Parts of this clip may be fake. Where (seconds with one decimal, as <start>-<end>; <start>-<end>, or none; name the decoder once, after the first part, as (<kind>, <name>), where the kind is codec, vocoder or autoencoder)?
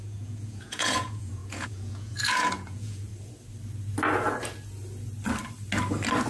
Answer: 0.0-3.1 (vocoder, Vocos)